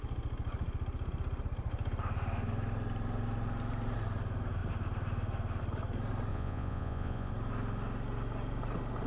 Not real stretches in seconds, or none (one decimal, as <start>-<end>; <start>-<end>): 6.3-7.3